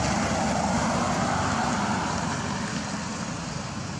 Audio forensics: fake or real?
real